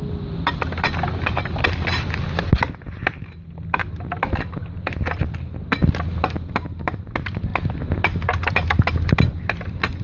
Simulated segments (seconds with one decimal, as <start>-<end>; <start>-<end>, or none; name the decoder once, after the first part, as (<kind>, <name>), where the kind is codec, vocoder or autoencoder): none